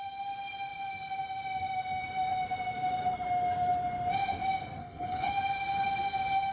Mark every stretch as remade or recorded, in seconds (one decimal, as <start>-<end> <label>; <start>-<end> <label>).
0.0-4.8 recorded; 4.8-5.3 remade; 5.3-6.5 recorded